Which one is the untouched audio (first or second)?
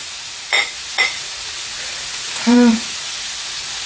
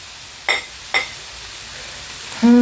second